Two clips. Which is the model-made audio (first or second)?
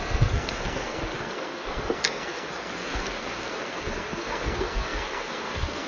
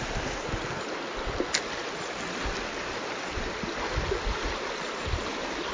first